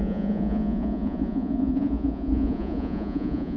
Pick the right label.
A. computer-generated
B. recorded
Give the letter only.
A